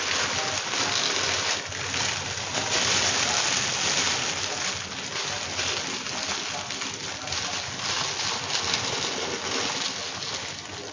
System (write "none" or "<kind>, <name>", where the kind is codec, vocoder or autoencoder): none